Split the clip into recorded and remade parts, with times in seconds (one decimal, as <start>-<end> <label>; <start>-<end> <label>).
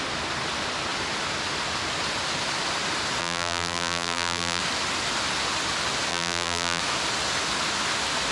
0.0-3.2 recorded; 3.2-4.6 remade; 4.6-6.1 recorded; 6.1-6.8 remade; 6.8-8.3 recorded